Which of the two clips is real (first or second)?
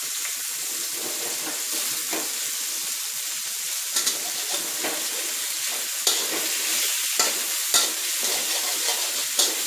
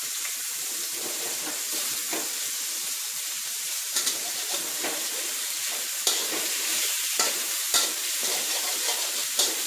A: first